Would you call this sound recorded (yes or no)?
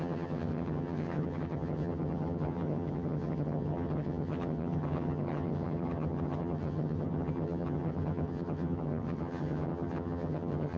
no